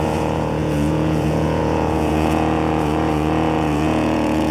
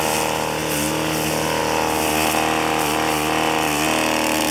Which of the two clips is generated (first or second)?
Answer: first